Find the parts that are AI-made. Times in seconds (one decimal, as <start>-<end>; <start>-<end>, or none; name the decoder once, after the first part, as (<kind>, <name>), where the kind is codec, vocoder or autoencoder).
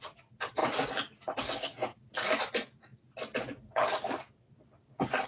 none